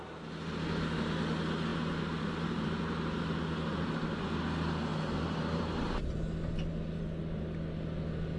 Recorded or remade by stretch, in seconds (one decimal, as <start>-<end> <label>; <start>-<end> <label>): 0.0-1.7 recorded; 1.7-2.8 remade; 2.8-4.9 recorded; 4.9-6.2 remade; 6.2-8.4 recorded